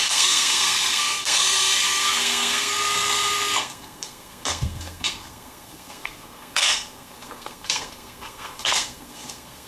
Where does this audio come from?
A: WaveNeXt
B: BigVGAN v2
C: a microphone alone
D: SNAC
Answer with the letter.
D